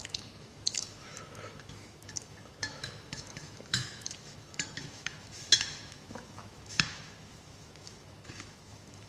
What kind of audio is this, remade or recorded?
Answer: remade